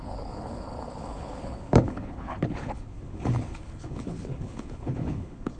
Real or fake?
fake